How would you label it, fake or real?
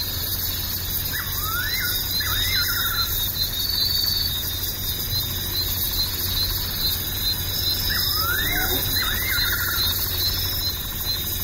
real